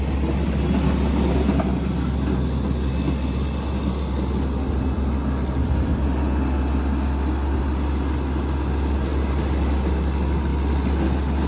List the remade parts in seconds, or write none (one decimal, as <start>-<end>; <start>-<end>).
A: none